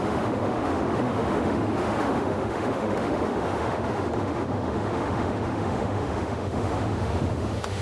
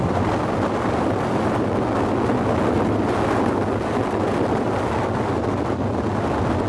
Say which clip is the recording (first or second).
second